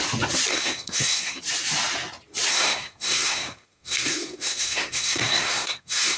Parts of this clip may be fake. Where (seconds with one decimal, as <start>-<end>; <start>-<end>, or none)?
0.5-1.4; 2.5-6.2